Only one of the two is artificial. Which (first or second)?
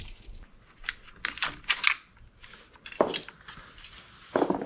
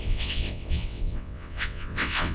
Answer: second